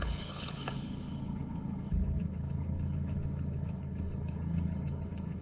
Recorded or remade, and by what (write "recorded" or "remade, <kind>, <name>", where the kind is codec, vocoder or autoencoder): remade, codec, HILCodec